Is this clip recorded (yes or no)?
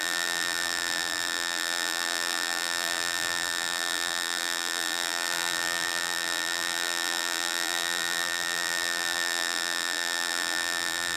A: no